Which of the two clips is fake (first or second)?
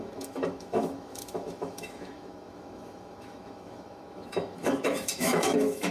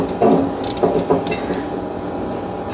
first